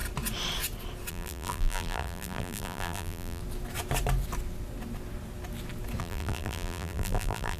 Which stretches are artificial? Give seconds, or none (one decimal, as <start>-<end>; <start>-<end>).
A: 1.1-3.4; 6.0-7.6